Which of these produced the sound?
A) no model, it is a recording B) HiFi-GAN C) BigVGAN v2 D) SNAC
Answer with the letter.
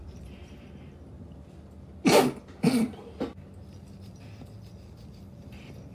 A